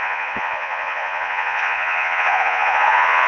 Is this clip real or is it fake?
fake